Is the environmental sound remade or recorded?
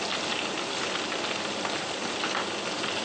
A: recorded